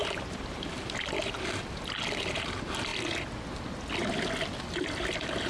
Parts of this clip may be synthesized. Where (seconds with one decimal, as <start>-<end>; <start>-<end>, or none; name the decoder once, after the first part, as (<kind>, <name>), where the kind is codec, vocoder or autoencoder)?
0.0-1.2 (vocoder, BigVGAN v2)